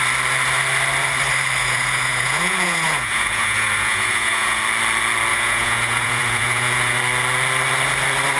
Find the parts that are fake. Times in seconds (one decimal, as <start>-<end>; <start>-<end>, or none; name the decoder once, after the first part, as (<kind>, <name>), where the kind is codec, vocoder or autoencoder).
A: 1.6-4.6 (vocoder, Vocos); 5.3-7.0